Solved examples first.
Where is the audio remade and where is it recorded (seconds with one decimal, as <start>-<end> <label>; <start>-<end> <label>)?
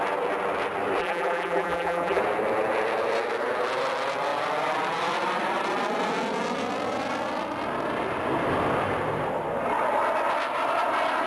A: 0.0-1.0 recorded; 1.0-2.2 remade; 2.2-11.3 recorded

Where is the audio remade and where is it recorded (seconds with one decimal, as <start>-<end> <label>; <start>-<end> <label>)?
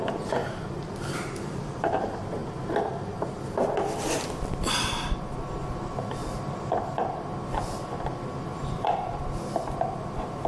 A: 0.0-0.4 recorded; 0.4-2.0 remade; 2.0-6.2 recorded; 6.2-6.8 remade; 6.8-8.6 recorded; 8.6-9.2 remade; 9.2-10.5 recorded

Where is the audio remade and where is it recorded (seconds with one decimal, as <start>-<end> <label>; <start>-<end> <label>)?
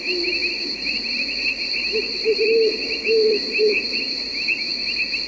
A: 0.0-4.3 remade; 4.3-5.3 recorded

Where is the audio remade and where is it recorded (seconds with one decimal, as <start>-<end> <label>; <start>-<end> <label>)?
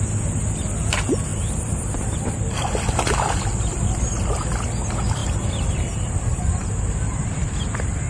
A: 0.0-1.3 recorded; 1.3-4.0 remade; 4.0-6.3 recorded; 6.3-7.4 remade; 7.4-8.1 recorded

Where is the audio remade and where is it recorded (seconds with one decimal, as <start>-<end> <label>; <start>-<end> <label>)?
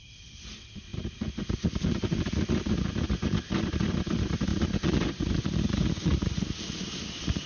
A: 0.0-4.5 remade; 4.5-5.3 recorded; 5.3-6.1 remade; 6.1-7.0 recorded; 7.0-7.5 remade